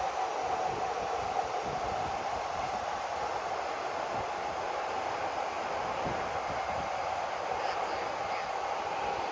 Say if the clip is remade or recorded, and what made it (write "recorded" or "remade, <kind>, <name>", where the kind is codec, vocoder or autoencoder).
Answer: recorded